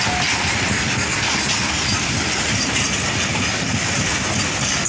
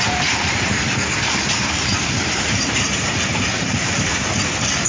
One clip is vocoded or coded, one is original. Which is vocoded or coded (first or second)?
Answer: second